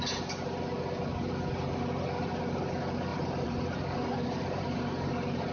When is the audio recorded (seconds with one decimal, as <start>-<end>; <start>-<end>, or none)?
0.0-3.1; 4.8-5.5